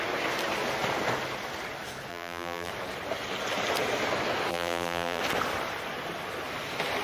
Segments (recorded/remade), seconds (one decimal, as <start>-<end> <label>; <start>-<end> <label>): 0.0-2.1 recorded; 2.1-2.7 remade; 2.7-4.5 recorded; 4.5-5.2 remade; 5.2-7.0 recorded